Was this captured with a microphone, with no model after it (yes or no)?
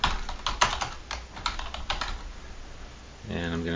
yes